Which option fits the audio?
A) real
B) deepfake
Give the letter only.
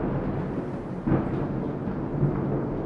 A